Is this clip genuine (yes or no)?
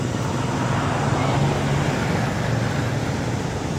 yes